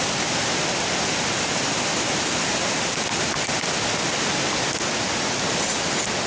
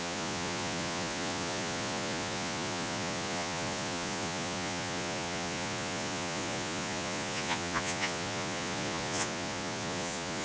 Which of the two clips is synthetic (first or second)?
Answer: second